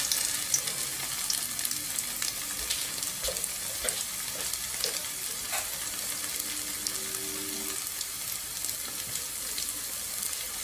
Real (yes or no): yes